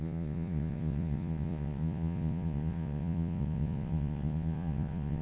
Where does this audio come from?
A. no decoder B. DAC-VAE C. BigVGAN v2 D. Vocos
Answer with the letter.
D